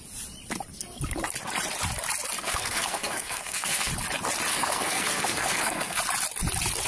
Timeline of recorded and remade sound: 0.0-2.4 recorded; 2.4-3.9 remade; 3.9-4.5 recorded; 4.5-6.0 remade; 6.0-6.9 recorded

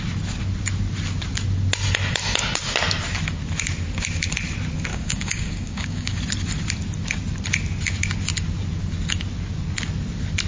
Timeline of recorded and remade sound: 0.0-4.9 recorded; 4.9-6.2 remade; 6.2-10.5 recorded

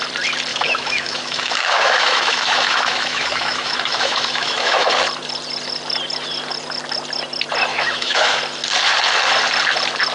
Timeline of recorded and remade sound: 0.0-0.5 recorded; 0.5-4.9 remade; 4.9-7.7 recorded; 7.7-8.4 remade; 8.4-10.1 recorded

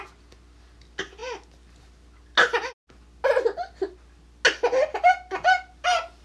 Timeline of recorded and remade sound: 0.0-6.2 recorded

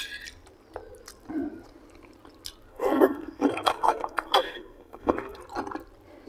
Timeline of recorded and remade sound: 0.0-2.7 recorded; 2.7-5.4 remade; 5.4-6.3 recorded

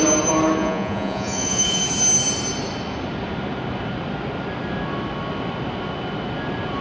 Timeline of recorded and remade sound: 0.0-0.6 recorded; 0.6-1.8 remade; 1.8-6.8 recorded